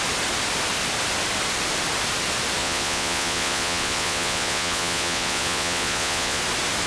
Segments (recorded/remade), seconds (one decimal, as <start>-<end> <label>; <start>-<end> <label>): 0.0-2.6 recorded; 2.6-6.4 remade; 6.4-6.9 recorded